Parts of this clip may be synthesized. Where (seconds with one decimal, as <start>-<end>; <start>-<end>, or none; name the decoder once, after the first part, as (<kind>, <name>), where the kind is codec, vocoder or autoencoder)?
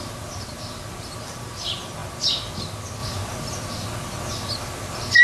none